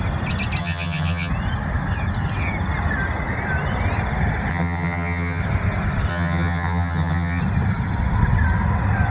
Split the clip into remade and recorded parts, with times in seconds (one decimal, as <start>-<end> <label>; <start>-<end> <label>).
0.0-0.6 recorded; 0.6-1.3 remade; 1.3-4.5 recorded; 4.5-5.4 remade; 5.4-6.1 recorded; 6.1-7.4 remade; 7.4-9.1 recorded